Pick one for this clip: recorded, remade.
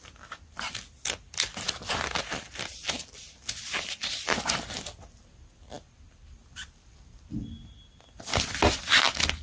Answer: recorded